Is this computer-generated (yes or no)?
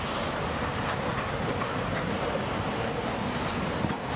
no